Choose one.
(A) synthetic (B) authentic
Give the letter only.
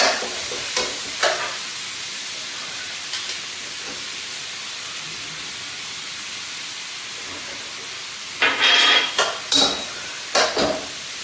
B